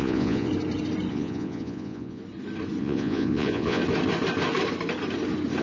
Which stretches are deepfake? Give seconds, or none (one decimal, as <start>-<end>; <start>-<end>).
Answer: 0.0-0.5; 1.1-2.2; 2.8-3.8